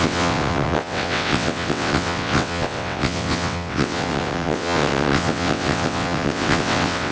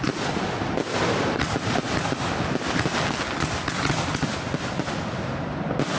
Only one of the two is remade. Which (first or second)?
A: first